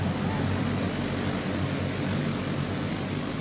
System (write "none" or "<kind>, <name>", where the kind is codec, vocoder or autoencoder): none